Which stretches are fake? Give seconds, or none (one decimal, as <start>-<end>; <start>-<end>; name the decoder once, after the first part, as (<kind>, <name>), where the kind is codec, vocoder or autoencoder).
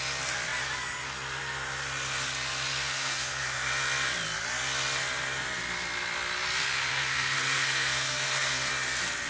2.8-3.7 (codec, SNAC); 6.9-8.7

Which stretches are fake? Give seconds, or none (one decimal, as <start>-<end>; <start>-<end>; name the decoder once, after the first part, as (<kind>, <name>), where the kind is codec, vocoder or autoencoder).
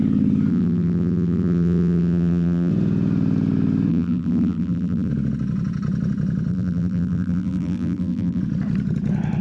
0.5-2.7 (vocoder, BigVGAN v2); 3.9-5.1; 6.5-8.4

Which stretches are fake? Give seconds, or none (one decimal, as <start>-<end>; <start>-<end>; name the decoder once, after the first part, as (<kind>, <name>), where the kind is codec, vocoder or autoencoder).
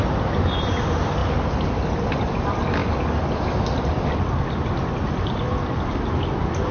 none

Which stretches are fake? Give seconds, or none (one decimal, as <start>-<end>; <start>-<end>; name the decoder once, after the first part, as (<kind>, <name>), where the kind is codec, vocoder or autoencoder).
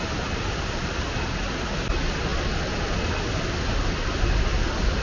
none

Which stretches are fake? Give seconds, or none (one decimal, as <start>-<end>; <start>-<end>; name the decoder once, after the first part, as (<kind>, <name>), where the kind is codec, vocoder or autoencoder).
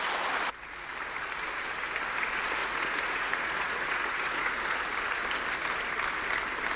2.6-4.5 (vocoder, Vocos)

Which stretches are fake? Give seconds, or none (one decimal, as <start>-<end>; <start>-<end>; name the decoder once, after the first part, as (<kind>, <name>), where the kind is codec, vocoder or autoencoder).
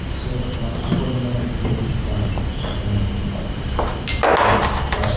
none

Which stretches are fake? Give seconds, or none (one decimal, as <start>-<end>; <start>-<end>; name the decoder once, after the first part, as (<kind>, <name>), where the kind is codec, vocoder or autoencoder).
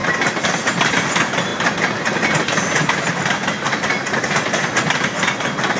none